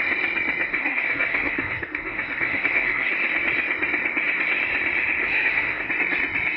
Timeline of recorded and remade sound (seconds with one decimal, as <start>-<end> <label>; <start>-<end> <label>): 0.0-0.7 recorded; 0.7-3.1 remade; 3.1-5.2 recorded; 5.2-5.9 remade; 5.9-6.6 recorded